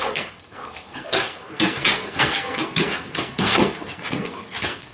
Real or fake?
fake